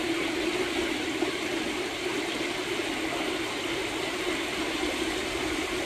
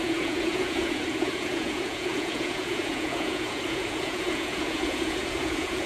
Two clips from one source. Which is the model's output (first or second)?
second